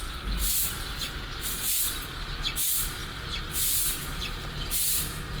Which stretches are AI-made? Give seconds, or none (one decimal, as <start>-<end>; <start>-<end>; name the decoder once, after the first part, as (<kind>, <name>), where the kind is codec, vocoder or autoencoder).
none